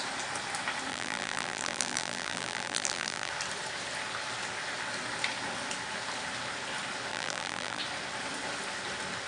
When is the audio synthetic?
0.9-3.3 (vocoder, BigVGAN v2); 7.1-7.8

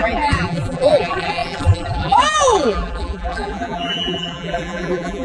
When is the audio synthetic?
0.0-5.2 (vocoder, BigVGAN v2)

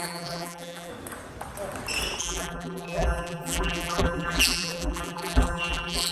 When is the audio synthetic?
0.0-0.9 (vocoder, BigVGAN v2); 2.2-6.1

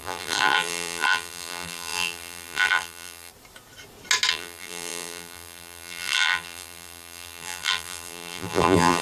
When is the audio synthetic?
0.0-3.3 (vocoder, BigVGAN v2); 4.3-9.0

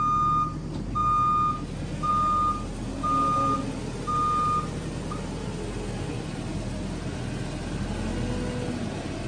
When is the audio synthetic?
none

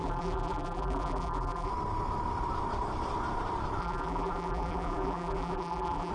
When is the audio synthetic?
0.0-1.7 (vocoder, BigVGAN v2); 3.8-6.1

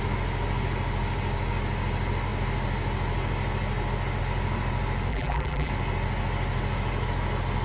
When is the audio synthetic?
5.1-5.7 (vocoder, BigVGAN v2)

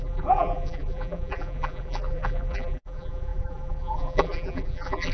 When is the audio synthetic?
0.0-5.1 (vocoder, BigVGAN v2)